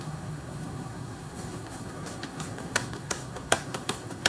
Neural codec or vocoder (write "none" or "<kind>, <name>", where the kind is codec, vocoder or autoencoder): codec, SNAC